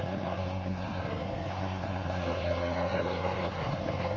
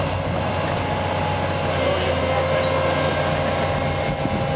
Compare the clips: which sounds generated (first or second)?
first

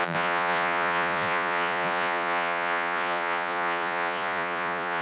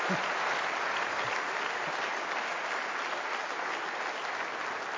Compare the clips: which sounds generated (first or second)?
first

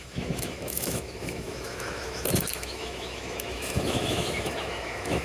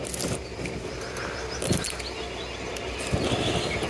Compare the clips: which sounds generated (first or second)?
first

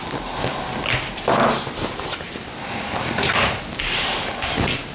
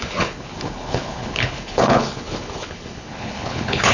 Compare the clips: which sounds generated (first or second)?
second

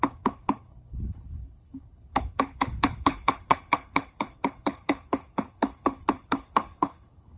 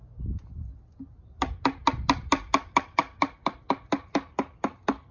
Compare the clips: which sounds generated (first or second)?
first